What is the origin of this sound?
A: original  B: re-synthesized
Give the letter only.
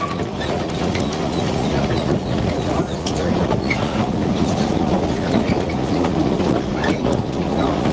B